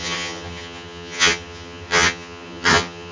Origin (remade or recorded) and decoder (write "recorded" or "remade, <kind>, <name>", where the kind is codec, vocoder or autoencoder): remade, vocoder, HiFi-GAN